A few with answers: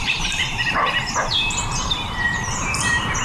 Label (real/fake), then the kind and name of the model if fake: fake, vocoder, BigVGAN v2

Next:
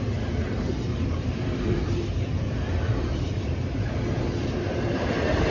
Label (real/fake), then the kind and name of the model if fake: fake, vocoder, BigVGAN v2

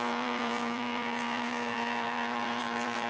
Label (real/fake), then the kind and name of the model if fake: fake, vocoder, BigVGAN v2